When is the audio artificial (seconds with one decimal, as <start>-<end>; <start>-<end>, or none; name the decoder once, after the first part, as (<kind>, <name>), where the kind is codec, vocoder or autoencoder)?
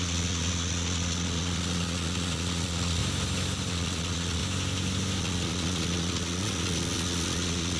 0.0-3.0 (vocoder, Vocos); 3.7-4.4; 5.2-7.8